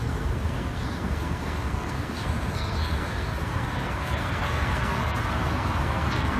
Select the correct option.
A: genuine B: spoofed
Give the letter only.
B